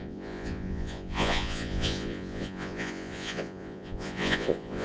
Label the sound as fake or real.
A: fake